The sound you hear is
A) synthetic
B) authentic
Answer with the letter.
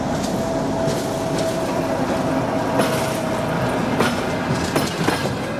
B